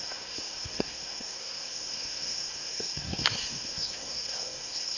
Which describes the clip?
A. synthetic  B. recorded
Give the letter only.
A